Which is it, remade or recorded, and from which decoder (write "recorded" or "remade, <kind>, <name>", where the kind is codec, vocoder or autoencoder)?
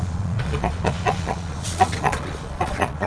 remade, vocoder, Vocos